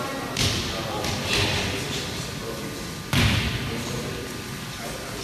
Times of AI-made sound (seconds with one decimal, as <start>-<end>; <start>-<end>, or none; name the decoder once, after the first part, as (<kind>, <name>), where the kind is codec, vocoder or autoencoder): none